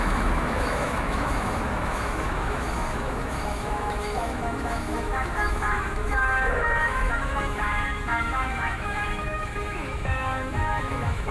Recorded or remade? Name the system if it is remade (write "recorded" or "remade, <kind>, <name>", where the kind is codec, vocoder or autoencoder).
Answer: remade, autoencoder, DAC-VAE